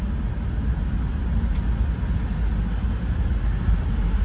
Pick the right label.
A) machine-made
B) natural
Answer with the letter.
B